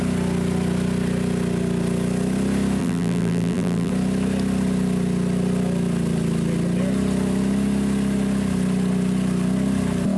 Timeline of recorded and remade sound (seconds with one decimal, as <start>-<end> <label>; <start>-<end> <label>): 0.0-2.8 recorded; 2.8-3.9 remade; 3.9-10.2 recorded